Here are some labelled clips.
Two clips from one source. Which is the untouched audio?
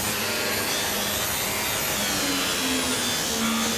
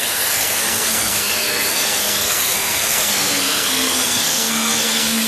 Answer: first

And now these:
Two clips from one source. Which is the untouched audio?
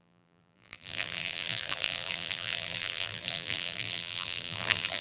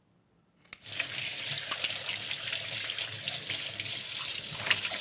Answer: second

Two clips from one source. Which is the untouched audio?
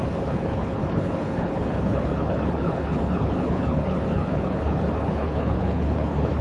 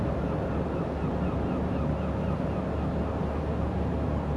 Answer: second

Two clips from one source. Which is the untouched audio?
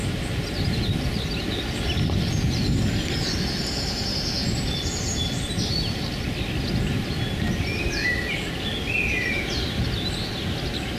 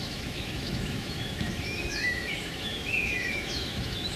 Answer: first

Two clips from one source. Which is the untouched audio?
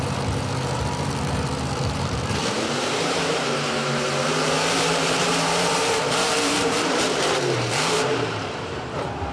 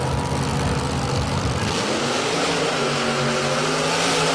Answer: second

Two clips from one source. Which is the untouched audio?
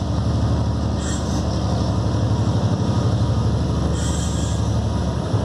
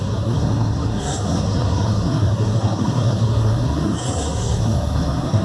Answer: first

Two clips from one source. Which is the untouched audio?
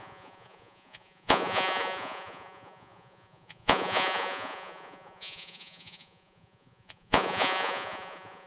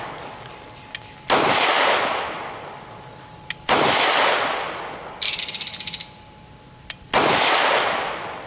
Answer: second